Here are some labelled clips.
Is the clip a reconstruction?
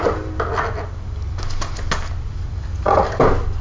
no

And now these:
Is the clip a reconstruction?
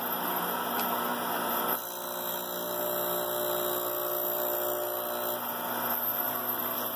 no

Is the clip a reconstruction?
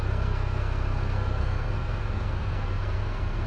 yes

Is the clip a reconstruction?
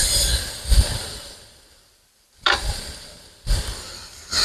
no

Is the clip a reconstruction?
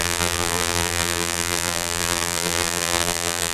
yes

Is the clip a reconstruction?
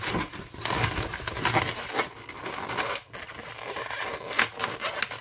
no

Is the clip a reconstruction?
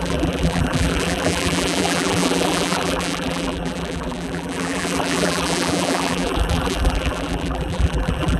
yes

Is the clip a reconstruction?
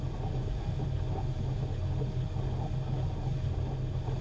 no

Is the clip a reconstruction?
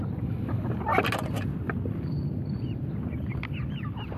no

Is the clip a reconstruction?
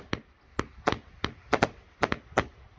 no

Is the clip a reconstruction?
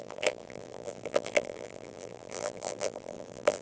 yes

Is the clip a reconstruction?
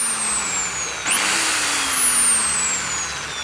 no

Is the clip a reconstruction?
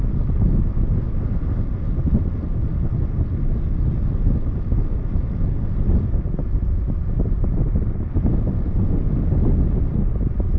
no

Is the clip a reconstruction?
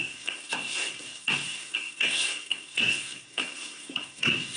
yes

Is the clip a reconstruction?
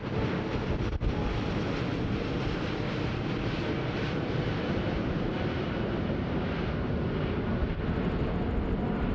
no